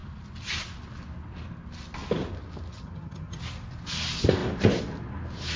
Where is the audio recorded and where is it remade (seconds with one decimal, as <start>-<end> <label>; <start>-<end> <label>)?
0.0-2.7 recorded; 2.7-3.4 remade; 3.4-5.6 recorded